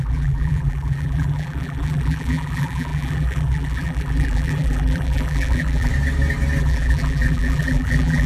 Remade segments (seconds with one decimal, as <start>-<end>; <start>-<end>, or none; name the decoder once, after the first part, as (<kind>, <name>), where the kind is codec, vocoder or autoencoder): 0.0-5.9 (vocoder, BigVGAN v2); 6.6-8.3